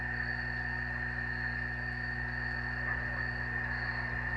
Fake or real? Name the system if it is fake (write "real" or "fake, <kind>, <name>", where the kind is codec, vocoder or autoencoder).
real